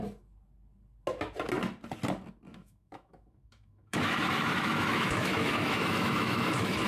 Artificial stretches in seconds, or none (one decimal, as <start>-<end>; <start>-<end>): 2.5-6.9

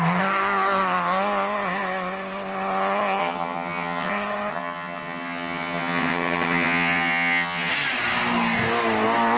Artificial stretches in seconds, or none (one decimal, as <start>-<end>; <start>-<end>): 3.2-4.1; 4.5-7.7

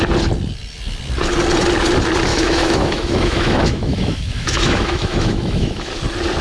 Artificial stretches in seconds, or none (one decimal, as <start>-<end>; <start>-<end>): 2.3-5.9

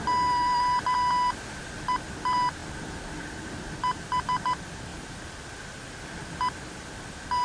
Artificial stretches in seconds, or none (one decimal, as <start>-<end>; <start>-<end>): none

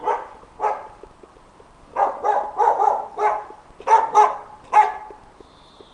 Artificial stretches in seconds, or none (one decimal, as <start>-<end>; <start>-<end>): none